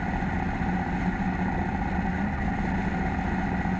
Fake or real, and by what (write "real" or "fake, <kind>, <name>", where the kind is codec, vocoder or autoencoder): real